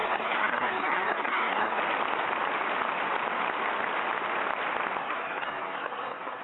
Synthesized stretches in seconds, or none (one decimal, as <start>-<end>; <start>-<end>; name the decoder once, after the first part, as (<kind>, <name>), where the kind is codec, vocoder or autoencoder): 0.0-1.8 (codec, SNAC); 5.0-6.4